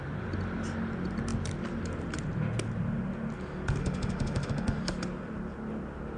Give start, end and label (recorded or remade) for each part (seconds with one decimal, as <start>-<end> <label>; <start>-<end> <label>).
0.0-3.8 recorded; 3.8-4.8 remade; 4.8-6.2 recorded